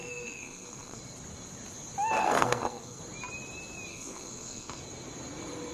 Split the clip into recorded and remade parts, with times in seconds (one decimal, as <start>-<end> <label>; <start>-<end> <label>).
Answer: 0.0-1.0 remade; 1.0-2.2 recorded; 2.2-3.0 remade; 3.0-3.9 recorded; 3.9-4.8 remade; 4.8-5.7 recorded